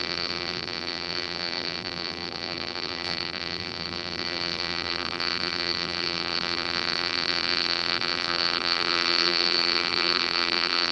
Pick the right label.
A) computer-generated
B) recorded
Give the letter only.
A